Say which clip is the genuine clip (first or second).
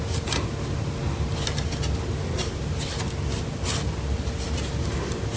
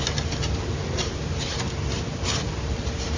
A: first